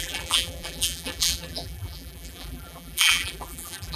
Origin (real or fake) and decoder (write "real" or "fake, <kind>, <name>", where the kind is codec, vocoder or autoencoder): fake, vocoder, BigVGAN v2